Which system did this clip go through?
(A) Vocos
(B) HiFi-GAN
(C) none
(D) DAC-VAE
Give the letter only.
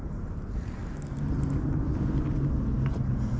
C